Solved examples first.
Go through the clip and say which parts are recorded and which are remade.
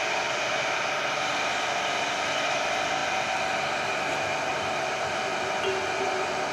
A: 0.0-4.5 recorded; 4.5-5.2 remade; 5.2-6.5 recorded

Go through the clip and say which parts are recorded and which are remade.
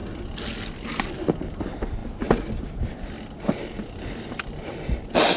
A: 0.0-5.4 recorded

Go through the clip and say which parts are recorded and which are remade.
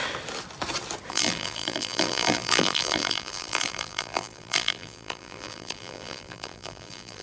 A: 0.0-1.1 recorded; 1.1-7.2 remade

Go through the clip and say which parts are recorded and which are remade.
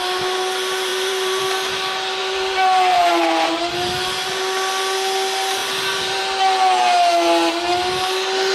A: 0.0-0.9 recorded; 0.9-1.4 remade; 1.4-2.2 recorded; 2.2-3.1 remade; 3.1-5.6 recorded; 5.6-6.2 remade; 6.2-8.5 recorded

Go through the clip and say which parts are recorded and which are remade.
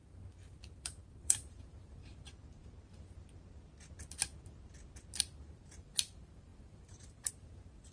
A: 0.0-2.0 remade; 2.0-5.2 recorded; 5.2-7.9 remade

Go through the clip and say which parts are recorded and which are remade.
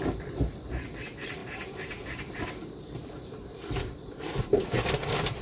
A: 0.0-1.4 recorded; 1.4-4.3 remade; 4.3-5.4 recorded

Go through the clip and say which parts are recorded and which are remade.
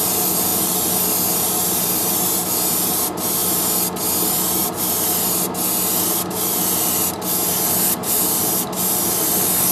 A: 0.0-9.7 recorded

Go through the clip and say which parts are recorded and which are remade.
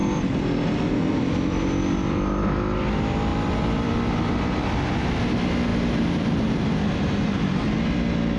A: 0.0-3.3 recorded; 3.3-3.9 remade; 3.9-5.7 recorded; 5.7-7.5 remade; 7.5-8.4 recorded